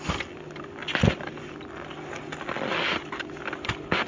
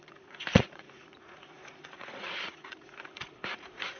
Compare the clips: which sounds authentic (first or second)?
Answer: first